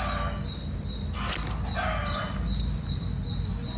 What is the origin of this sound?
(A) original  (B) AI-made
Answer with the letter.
A